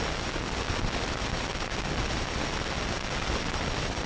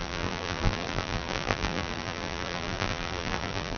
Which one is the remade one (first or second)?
second